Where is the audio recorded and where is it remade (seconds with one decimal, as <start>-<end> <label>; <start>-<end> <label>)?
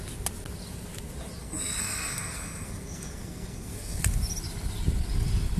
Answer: 0.0-1.4 recorded; 1.4-4.0 remade; 4.0-5.6 recorded